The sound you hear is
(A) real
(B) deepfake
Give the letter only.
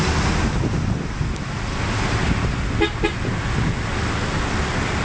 A